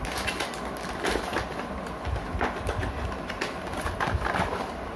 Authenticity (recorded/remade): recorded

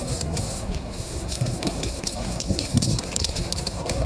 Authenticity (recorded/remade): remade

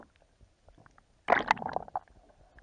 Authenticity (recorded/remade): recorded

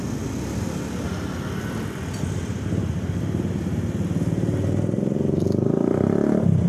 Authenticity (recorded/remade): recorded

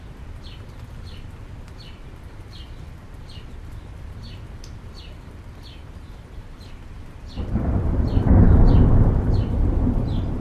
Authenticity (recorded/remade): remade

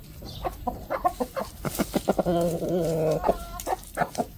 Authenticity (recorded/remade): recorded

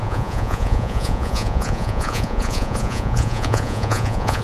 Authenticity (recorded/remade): remade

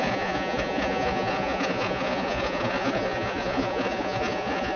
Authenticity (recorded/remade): remade